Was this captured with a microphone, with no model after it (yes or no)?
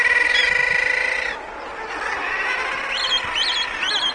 yes